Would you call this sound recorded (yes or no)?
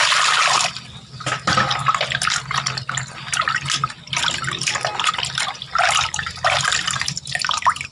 yes